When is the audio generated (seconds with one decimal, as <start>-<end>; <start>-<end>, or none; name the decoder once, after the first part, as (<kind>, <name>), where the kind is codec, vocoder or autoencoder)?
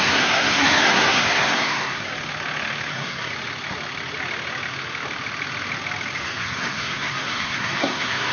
0.0-2.1 (codec, SNAC); 2.9-3.3; 6.2-8.3